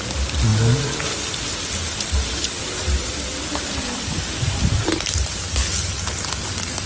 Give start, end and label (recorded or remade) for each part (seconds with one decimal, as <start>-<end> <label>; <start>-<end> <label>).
0.0-6.9 recorded